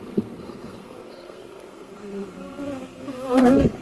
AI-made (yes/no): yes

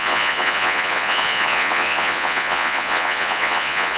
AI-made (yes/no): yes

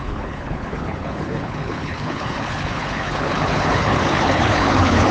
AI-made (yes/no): yes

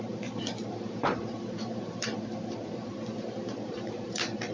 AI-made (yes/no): yes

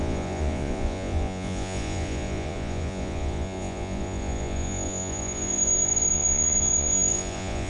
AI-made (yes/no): yes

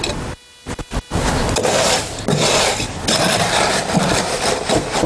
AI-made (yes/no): no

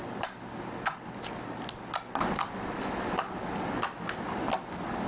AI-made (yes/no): no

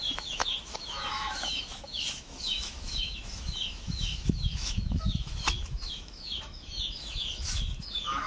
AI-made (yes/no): yes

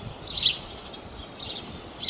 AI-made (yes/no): no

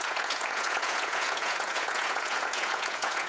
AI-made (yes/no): yes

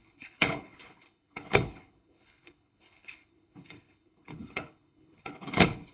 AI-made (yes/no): yes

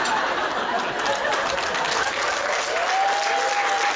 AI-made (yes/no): no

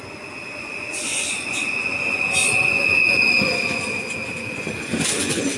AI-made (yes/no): yes